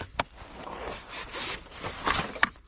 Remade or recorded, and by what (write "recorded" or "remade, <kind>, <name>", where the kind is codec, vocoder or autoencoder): recorded